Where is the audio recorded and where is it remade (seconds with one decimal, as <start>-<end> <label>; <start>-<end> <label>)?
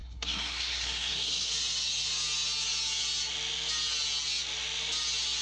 0.0-1.5 remade; 1.5-5.4 recorded